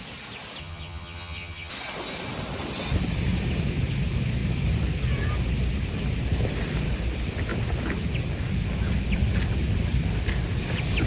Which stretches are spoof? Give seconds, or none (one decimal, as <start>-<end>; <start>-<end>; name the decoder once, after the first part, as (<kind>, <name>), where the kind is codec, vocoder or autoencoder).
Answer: 0.6-1.7 (vocoder, HiFi-GAN)